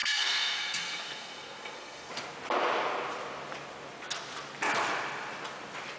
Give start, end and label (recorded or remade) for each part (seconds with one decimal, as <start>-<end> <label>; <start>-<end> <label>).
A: 0.0-2.1 remade; 2.1-6.0 recorded